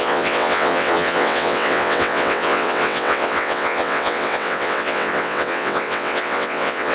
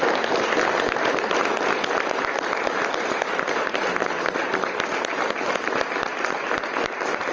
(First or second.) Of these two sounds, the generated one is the first